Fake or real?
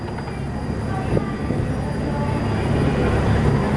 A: real